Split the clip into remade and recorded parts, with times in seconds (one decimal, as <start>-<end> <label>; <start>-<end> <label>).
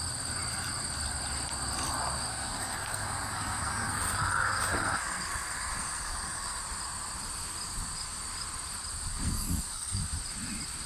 0.0-2.3 recorded; 2.3-6.6 remade; 6.6-9.1 recorded; 9.1-10.0 remade; 10.0-10.9 recorded